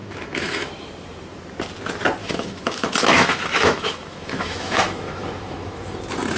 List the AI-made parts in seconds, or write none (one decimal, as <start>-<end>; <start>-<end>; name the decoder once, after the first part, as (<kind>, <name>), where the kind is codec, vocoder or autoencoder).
0.0-0.7 (autoencoder, DAC-VAE); 2.2-6.0